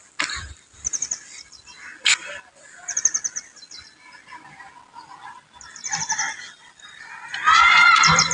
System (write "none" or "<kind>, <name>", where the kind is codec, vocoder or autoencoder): none